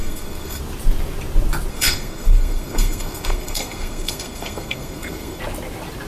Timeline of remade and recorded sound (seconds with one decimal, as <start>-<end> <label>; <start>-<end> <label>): 0.0-0.6 remade; 0.6-1.7 recorded; 1.7-5.4 remade; 5.4-6.1 recorded